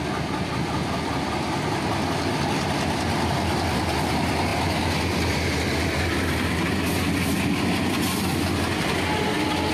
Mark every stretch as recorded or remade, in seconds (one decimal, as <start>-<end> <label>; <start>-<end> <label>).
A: 0.0-9.7 recorded